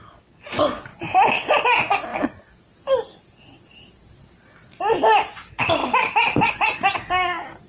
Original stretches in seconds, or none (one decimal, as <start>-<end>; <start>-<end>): 0.0-7.7